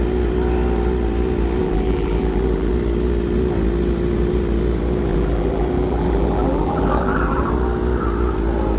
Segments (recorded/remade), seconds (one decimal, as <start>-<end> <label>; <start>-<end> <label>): 0.0-1.6 recorded; 1.6-2.7 remade; 2.7-5.1 recorded; 5.1-7.4 remade; 7.4-8.8 recorded

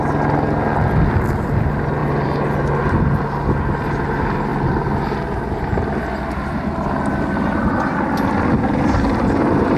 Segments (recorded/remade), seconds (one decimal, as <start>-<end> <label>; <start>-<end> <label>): 0.0-9.8 recorded

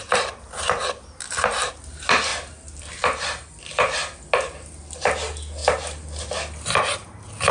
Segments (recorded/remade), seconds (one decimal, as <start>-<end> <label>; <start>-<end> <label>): 0.0-7.5 recorded

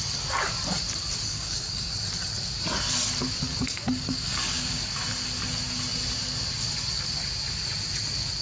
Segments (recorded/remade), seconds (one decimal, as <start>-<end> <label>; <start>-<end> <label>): 0.0-1.3 recorded; 1.3-1.9 remade; 1.9-3.5 recorded; 3.5-4.8 remade; 4.8-8.4 recorded

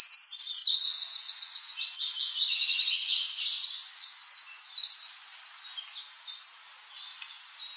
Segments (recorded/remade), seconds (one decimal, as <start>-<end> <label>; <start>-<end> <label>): 0.0-0.6 recorded; 0.6-4.7 remade; 4.7-7.8 recorded